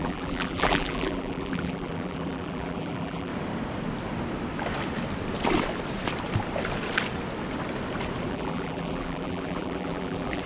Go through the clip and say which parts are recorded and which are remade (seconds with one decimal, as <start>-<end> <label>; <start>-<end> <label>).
0.0-3.3 remade; 3.3-8.3 recorded; 8.3-10.5 remade